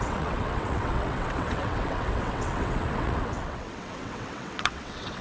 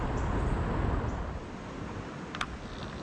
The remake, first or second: first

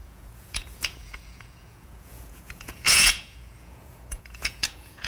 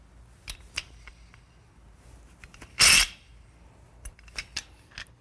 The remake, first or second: first